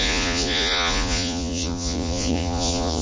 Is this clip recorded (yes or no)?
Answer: no